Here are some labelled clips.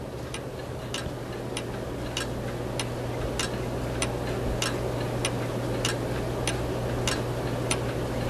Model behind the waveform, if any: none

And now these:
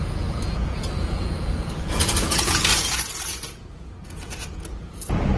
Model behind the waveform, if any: vocoder, Vocos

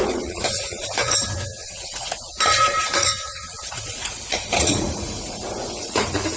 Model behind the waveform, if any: vocoder, Vocos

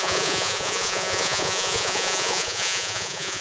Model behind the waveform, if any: vocoder, Vocos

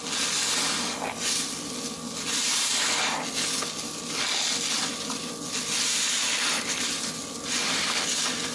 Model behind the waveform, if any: none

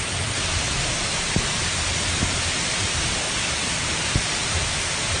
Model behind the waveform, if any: none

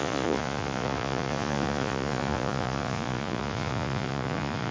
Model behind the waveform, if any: vocoder, Vocos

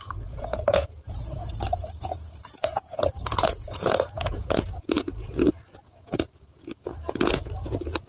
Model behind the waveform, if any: vocoder, Vocos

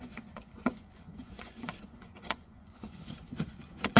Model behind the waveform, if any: vocoder, Vocos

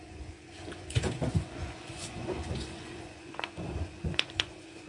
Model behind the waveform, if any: vocoder, Vocos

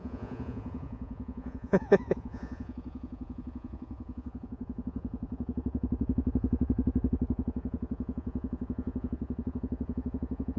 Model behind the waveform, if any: vocoder, Vocos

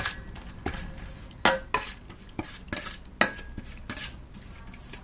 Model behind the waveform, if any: none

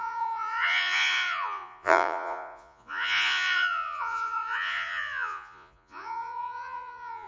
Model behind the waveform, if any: vocoder, Vocos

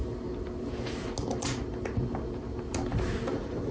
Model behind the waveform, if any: none